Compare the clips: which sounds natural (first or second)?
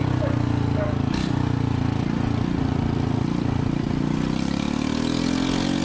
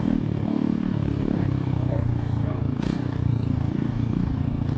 first